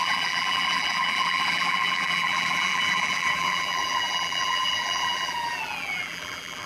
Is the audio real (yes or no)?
no